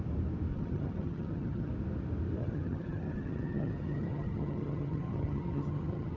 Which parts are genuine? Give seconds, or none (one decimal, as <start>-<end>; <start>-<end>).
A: 0.0-0.5; 1.7-2.4